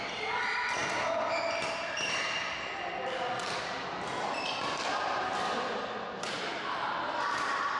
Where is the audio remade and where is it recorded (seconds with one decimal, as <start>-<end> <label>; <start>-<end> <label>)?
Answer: 0.0-7.8 recorded